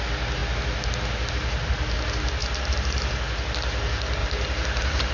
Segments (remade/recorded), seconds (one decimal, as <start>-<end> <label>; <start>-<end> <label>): 0.0-2.4 recorded; 2.4-3.2 remade; 3.2-4.2 recorded; 4.2-5.1 remade